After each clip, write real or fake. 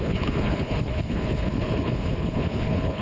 fake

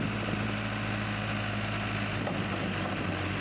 real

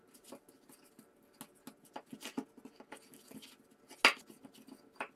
real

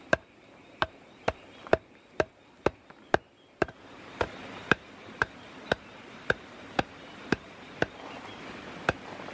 real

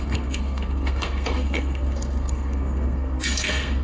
fake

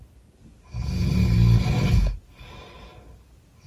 real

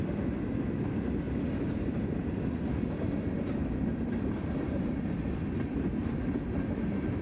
real